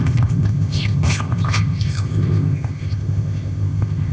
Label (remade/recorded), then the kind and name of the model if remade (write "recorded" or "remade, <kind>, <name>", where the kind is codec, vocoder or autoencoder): remade, codec, ZipCodec